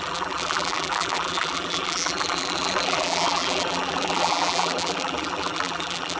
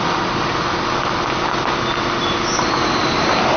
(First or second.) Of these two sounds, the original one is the second